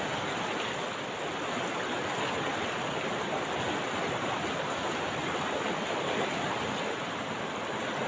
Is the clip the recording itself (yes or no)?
yes